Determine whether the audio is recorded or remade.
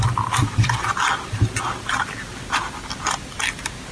recorded